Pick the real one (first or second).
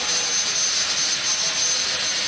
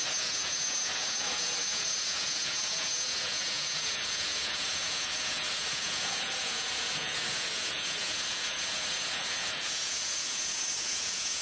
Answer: first